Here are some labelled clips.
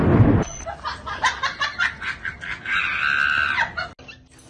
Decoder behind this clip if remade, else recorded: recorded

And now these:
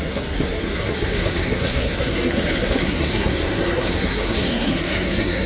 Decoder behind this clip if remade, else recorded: remade, codec, SNAC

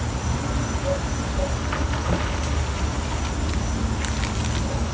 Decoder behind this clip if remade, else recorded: recorded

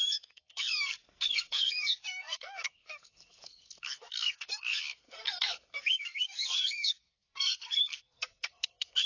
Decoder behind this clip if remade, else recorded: remade, codec, SNAC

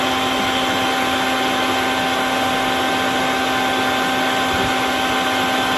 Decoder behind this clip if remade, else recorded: recorded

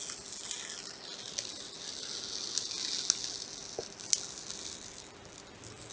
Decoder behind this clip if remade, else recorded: recorded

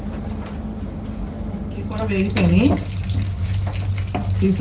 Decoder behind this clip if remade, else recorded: recorded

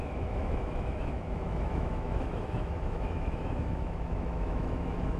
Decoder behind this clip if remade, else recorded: remade, autoencoder, DAC-VAE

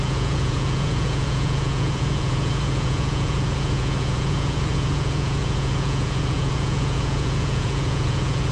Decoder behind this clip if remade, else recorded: remade, vocoder, Vocos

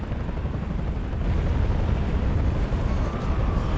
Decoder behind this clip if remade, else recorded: remade, vocoder, BigVGAN v2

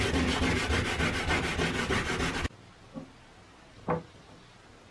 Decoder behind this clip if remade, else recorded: recorded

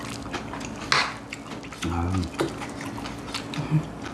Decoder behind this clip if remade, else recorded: recorded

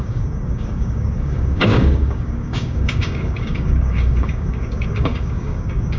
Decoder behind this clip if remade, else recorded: remade, codec, DAC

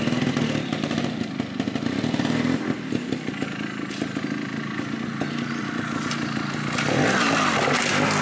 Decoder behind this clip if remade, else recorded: recorded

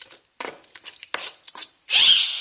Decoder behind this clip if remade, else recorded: recorded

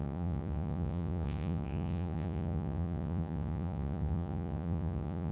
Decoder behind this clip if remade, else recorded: remade, vocoder, Vocos